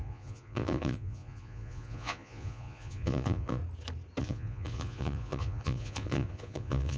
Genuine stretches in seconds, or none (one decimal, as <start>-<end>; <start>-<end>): 3.6-4.2